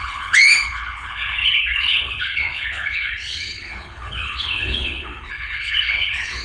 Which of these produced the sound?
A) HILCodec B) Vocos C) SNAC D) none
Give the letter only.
A